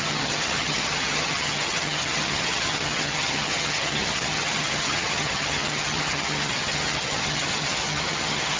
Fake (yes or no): yes